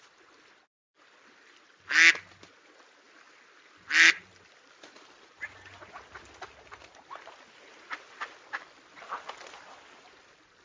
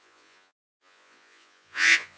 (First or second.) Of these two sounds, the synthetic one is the second